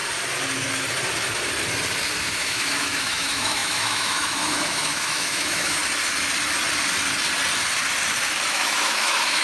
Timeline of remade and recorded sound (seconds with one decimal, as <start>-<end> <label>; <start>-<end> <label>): 0.0-2.2 recorded; 2.2-5.8 remade; 5.8-8.5 recorded; 8.5-9.4 remade